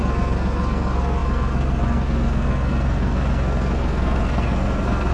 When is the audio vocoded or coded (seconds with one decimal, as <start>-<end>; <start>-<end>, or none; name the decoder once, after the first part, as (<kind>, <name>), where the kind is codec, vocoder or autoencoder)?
0.0-5.1 (codec, SNAC)